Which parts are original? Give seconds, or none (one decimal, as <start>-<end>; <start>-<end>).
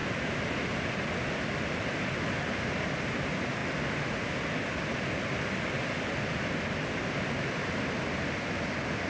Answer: 0.0-9.1